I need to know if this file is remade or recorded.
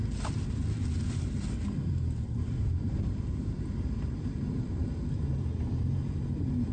remade